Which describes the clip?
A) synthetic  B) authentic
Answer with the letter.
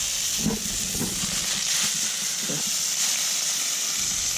B